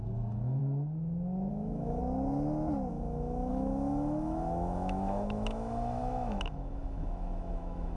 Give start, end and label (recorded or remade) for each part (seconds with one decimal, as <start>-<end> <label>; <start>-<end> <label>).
0.0-0.6 remade; 0.6-1.5 recorded; 1.5-2.0 remade; 2.0-2.9 recorded; 2.9-8.0 remade